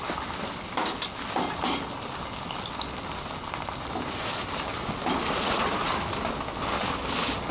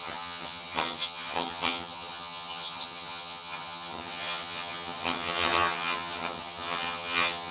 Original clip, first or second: first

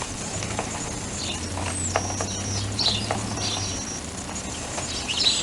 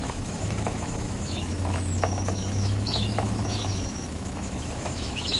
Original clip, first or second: first